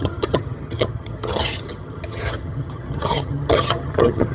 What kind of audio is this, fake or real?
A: fake